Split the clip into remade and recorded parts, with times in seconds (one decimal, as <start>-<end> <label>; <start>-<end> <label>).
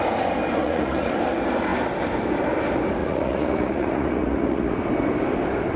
0.0-0.6 recorded; 0.6-1.1 remade; 1.1-3.0 recorded; 3.0-4.8 remade; 4.8-5.8 recorded